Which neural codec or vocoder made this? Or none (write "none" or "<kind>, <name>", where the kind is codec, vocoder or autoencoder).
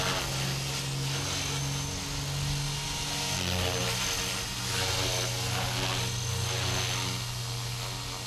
none